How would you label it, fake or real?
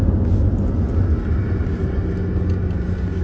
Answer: real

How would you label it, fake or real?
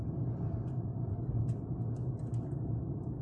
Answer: real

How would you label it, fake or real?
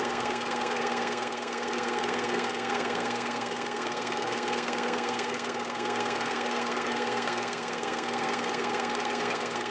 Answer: fake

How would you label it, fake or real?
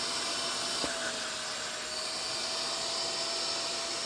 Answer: real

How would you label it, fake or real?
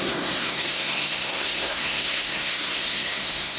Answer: fake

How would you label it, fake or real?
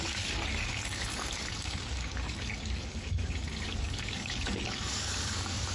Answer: fake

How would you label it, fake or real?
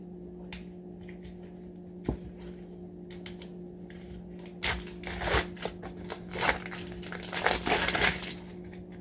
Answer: real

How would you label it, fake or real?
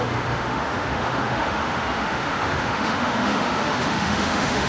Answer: fake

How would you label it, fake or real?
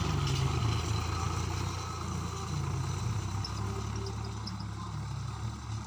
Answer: real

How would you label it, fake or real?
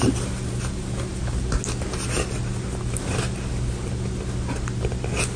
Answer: real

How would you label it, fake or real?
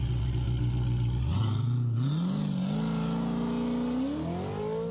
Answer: real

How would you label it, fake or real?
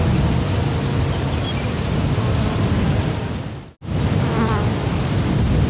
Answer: real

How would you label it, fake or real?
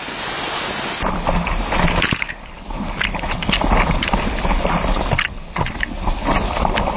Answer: real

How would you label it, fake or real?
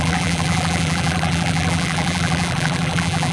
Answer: fake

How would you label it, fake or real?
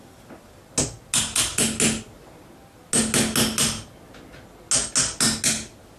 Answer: real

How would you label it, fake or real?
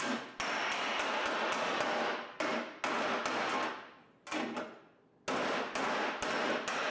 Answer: real